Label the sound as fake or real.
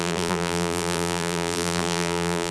fake